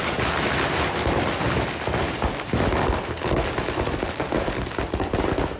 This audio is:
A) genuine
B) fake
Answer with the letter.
A